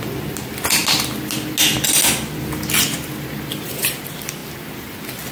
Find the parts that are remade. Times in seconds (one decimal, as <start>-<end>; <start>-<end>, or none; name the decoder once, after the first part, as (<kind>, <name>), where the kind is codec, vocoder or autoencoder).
none